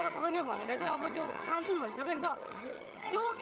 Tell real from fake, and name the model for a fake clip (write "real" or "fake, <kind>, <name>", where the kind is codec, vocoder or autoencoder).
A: fake, vocoder, HiFi-GAN